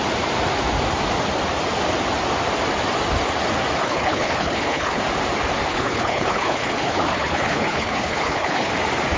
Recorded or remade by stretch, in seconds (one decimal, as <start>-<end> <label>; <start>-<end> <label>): 0.0-3.8 recorded; 3.8-5.0 remade; 5.0-5.7 recorded; 5.7-8.7 remade; 8.7-9.2 recorded